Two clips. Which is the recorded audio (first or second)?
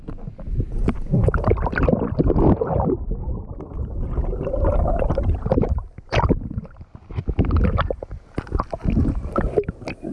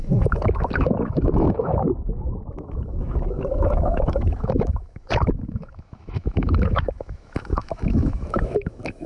first